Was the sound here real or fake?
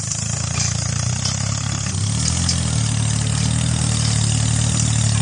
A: real